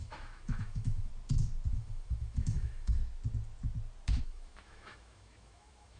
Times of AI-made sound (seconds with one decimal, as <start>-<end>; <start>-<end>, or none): 0.0-1.1; 1.7-3.0; 4.2-6.0